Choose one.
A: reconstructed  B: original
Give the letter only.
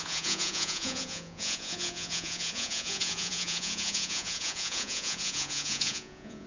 A